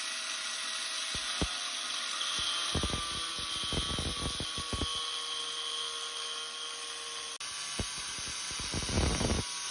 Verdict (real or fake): real